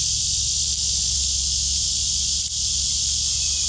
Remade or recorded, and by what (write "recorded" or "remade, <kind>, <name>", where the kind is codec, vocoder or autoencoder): remade, vocoder, BigVGAN v2